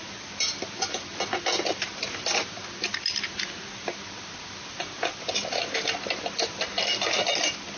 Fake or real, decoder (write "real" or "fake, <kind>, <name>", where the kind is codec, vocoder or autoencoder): real